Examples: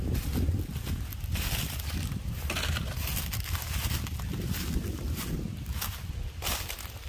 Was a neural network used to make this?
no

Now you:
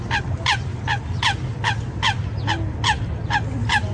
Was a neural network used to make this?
no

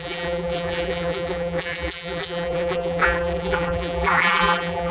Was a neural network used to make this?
yes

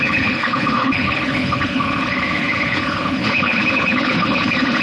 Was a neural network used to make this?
yes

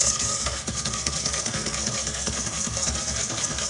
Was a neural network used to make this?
yes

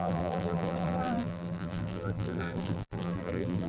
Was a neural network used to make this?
yes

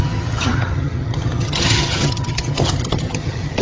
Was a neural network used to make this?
yes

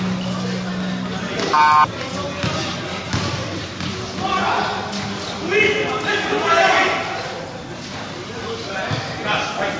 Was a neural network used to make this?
no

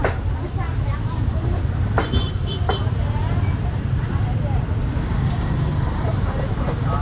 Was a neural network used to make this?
yes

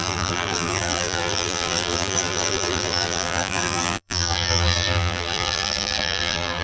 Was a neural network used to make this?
yes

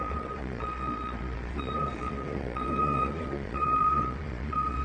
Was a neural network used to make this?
yes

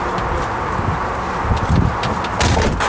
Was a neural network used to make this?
no